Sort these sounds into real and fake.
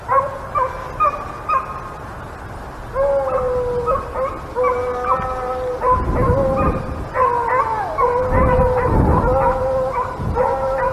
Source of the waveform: real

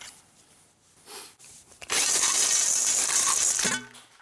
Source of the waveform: fake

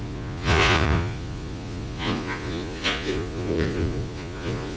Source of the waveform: fake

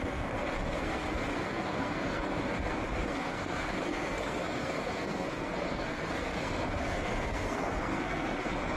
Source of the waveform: fake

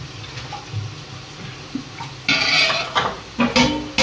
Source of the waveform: real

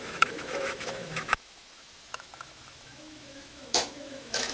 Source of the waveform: fake